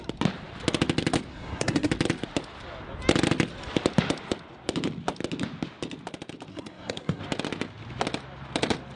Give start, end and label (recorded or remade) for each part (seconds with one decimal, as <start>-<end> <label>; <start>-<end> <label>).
0.0-1.3 recorded; 1.3-1.9 remade; 1.9-6.5 recorded; 6.5-7.2 remade; 7.2-9.0 recorded